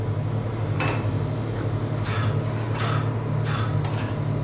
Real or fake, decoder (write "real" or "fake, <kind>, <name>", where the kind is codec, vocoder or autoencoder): real